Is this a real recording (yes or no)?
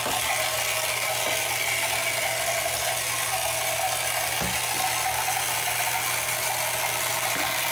yes